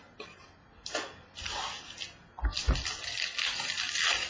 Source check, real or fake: real